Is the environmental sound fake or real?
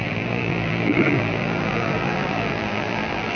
fake